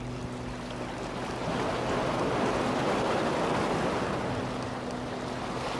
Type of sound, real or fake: real